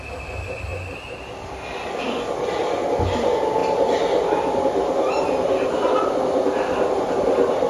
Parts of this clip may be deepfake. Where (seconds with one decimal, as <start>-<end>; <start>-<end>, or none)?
none